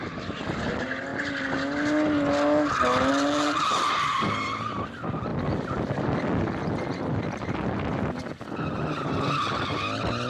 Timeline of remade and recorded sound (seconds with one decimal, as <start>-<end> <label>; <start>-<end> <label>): 0.0-10.3 recorded